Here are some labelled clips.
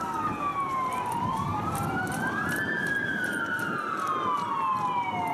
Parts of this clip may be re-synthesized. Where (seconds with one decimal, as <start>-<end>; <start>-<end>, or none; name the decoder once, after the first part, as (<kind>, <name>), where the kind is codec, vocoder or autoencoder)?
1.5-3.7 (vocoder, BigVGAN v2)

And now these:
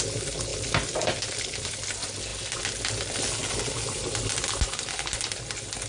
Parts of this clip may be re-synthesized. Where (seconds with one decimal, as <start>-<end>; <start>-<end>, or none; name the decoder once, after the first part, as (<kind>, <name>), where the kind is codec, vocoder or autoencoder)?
0.5-1.8 (vocoder, BigVGAN v2)

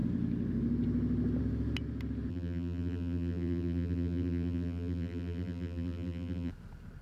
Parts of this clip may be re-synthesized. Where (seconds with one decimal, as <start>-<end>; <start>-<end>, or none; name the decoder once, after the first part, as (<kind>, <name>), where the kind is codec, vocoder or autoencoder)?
2.3-6.5 (vocoder, BigVGAN v2)

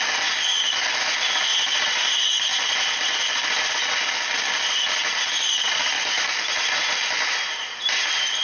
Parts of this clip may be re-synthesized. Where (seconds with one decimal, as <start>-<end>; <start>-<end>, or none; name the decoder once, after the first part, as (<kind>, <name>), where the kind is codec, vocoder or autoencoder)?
1.5-2.5 (vocoder, BigVGAN v2); 5.7-8.4

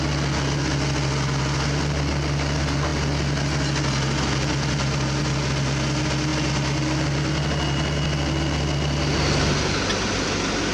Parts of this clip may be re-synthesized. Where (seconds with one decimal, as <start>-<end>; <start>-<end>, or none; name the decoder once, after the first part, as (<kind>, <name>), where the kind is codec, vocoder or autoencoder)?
none